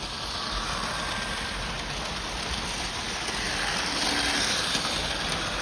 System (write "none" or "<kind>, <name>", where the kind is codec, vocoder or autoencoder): none